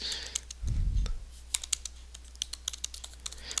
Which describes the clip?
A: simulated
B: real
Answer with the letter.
B